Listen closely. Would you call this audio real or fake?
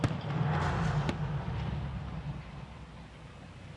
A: real